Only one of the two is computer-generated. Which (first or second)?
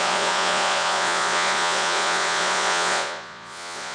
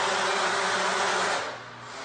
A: first